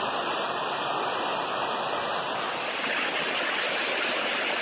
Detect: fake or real real